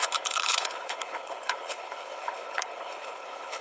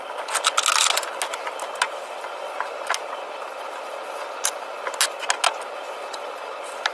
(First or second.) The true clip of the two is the second